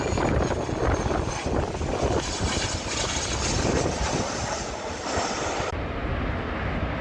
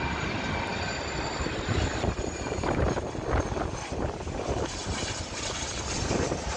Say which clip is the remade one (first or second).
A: second